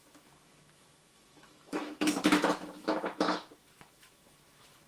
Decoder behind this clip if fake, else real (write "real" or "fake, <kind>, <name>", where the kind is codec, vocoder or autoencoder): fake, autoencoder, DAC-VAE